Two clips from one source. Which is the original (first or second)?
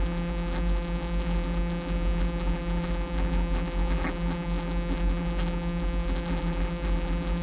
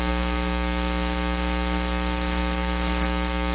second